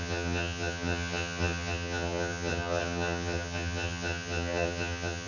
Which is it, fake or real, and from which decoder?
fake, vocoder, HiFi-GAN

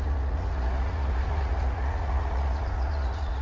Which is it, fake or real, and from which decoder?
fake, vocoder, Vocos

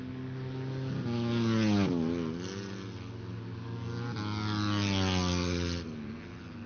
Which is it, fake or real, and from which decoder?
real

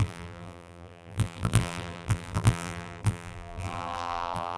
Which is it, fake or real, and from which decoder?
fake, vocoder, BigVGAN v2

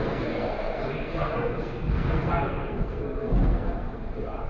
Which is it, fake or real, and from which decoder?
fake, codec, SNAC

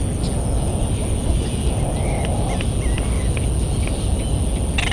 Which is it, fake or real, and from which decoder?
real